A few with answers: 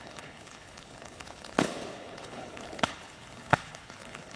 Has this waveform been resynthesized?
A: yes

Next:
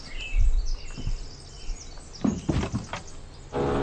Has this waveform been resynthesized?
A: no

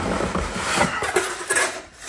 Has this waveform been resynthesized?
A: no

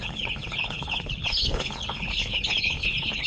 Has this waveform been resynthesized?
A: yes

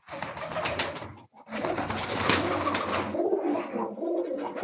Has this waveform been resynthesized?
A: no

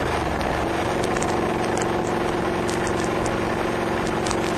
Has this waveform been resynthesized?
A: no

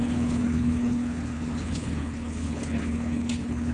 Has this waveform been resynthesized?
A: yes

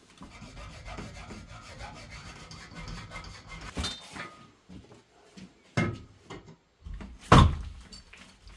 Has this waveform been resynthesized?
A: no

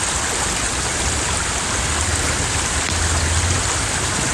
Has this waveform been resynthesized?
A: no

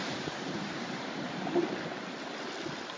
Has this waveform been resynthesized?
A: no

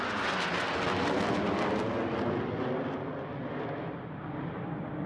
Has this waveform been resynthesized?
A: no